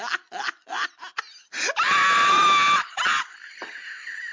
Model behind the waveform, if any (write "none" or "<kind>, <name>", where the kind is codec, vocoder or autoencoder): none